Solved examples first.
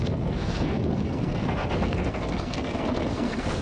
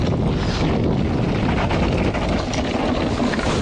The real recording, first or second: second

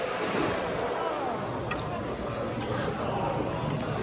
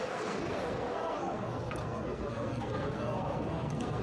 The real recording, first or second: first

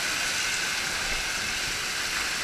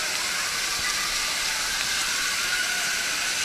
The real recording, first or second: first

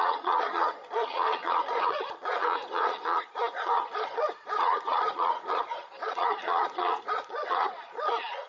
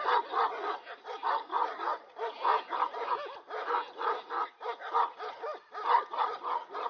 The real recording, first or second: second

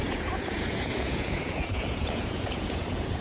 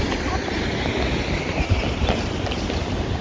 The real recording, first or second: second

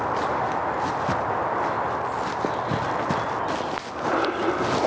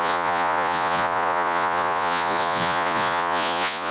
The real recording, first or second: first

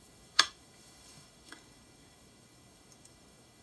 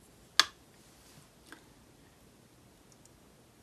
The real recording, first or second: second